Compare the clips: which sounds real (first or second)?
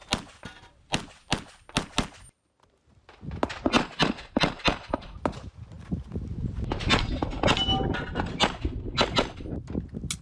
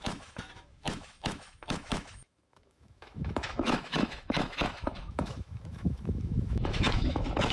first